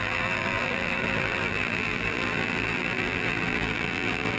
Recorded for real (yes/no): no